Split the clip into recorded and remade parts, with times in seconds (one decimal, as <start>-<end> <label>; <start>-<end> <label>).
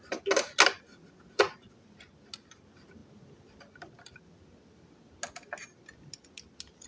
0.0-0.9 recorded; 0.9-1.7 remade; 1.7-6.9 recorded